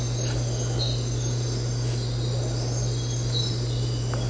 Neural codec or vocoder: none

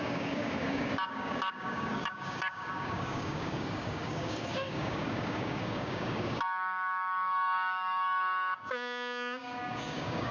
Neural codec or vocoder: codec, DAC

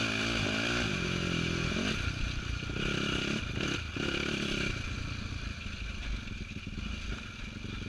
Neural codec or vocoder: none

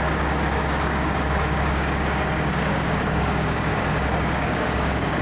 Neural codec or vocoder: codec, DAC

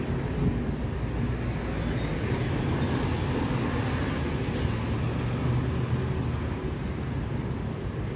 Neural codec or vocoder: none